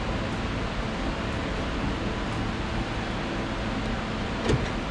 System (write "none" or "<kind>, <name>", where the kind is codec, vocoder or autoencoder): none